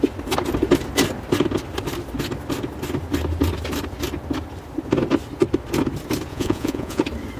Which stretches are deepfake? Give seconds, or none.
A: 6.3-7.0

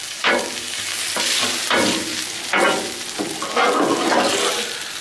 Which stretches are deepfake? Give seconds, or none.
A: 0.0-1.0

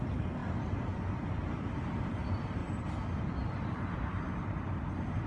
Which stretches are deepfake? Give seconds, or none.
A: 0.0-0.4; 1.5-2.6; 3.2-5.3

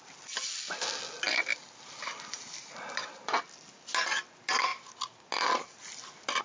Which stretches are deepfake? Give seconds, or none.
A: none

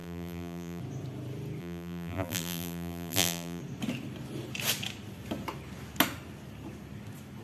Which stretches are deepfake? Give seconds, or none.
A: 0.0-0.8; 1.6-3.6

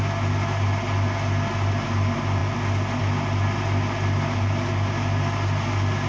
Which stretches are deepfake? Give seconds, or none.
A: none